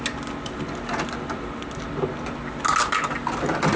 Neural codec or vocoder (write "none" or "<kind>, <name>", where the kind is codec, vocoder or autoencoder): none